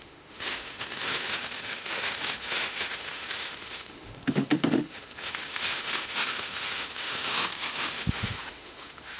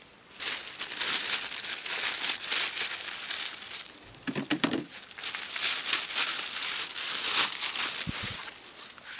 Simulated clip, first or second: first